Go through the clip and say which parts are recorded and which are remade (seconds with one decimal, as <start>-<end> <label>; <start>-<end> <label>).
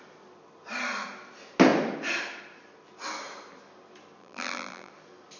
0.0-4.2 recorded; 4.2-4.9 remade; 4.9-5.4 recorded